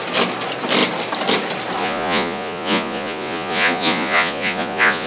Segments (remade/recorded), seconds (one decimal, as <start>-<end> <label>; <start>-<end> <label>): 0.0-1.8 recorded; 1.8-5.1 remade